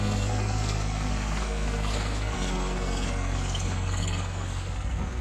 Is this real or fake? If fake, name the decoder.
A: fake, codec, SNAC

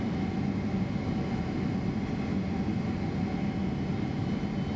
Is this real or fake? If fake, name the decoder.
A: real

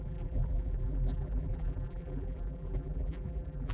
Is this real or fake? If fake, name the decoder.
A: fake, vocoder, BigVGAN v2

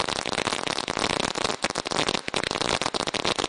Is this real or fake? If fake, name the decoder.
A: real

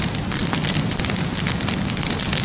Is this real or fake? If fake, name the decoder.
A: real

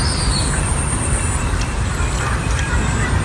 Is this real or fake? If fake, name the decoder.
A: fake, vocoder, BigVGAN v2